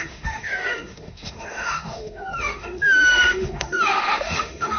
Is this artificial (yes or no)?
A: yes